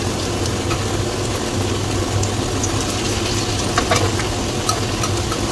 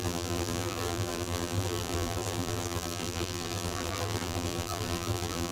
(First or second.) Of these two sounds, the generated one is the second